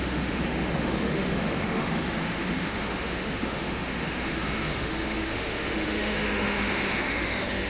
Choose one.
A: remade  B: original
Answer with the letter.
A